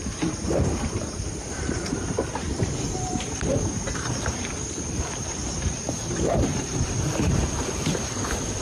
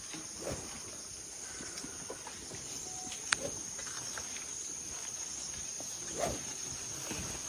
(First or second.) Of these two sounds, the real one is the second